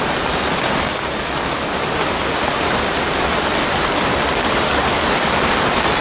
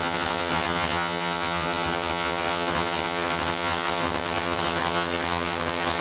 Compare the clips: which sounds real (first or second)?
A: first